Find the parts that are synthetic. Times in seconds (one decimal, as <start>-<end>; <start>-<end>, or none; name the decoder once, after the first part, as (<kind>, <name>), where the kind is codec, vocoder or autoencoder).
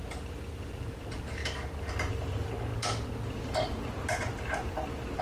0.0-1.4 (vocoder, BigVGAN v2); 2.1-2.7